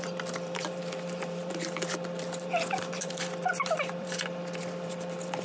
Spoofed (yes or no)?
yes